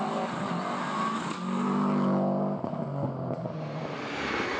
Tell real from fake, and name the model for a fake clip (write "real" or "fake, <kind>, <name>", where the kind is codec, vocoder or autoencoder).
real